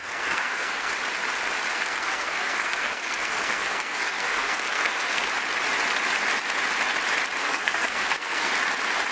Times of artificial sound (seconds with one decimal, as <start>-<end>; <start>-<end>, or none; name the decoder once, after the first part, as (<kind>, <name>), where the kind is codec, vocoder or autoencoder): 0.0-0.9 (codec, SNAC); 1.7-5.2; 7.4-8.5

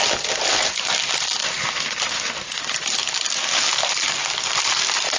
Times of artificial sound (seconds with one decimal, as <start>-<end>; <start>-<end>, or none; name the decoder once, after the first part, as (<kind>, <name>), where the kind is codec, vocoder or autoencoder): none

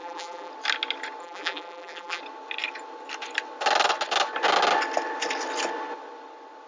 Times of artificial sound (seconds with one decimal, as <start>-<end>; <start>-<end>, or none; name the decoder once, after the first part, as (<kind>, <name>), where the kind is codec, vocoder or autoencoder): 0.0-0.5 (vocoder, BigVGAN v2); 1.2-2.2